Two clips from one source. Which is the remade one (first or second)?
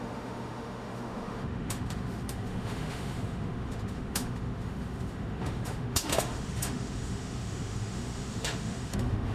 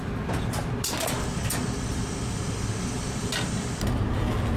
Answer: first